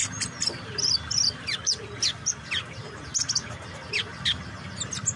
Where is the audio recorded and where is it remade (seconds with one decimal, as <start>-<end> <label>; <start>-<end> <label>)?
0.0-3.1 remade; 3.1-4.1 recorded; 4.1-4.7 remade; 4.7-5.2 recorded